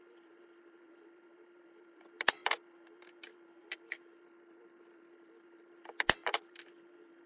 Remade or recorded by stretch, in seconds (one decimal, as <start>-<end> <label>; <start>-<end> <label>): 0.0-7.3 remade